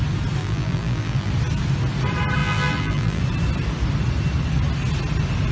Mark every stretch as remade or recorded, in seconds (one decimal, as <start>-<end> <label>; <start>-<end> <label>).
0.0-0.4 recorded; 0.4-1.3 remade; 1.3-2.4 recorded; 2.4-3.2 remade; 3.2-5.5 recorded